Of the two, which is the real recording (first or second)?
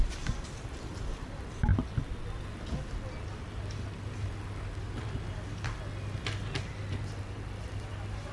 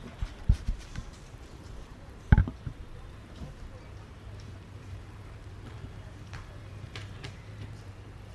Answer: first